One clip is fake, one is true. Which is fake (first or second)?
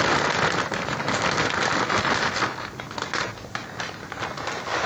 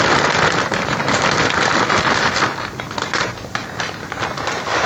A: second